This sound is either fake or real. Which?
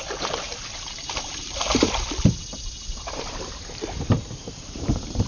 fake